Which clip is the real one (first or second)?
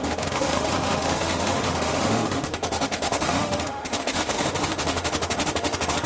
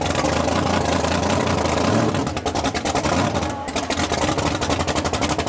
second